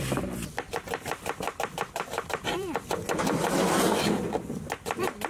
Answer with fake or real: fake